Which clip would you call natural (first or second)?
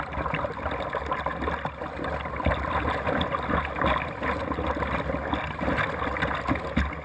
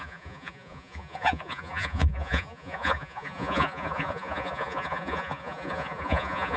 first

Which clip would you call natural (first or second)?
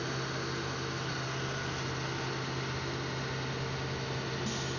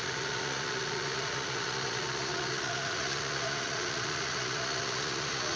first